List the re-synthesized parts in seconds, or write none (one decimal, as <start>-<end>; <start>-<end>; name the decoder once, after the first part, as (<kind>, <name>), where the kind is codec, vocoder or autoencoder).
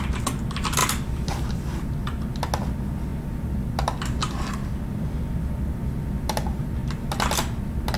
none